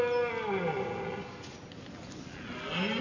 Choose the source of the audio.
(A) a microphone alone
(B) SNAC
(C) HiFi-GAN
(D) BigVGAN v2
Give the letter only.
A